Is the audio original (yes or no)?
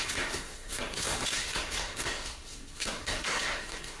no